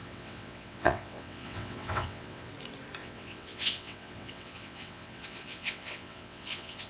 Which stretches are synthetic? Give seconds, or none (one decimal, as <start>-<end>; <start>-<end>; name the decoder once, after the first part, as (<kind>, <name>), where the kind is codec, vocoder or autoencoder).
0.0-2.5 (vocoder, WaveNeXt); 3.0-6.9